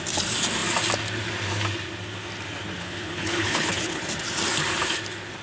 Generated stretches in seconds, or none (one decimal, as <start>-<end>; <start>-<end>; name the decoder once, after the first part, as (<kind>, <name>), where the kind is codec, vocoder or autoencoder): 2.8-4.0 (codec, HILCodec)